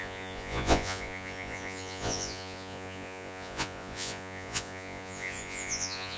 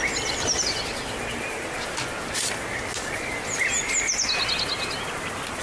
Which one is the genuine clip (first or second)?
second